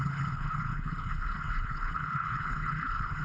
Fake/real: fake